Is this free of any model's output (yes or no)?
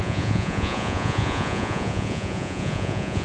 no